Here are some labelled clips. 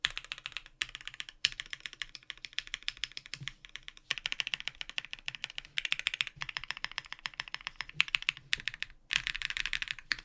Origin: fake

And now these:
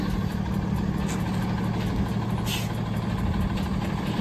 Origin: real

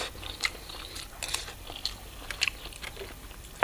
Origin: fake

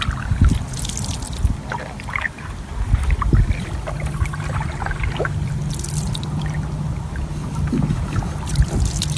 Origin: real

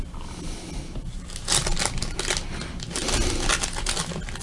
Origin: real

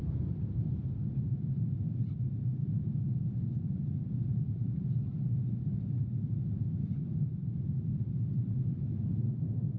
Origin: fake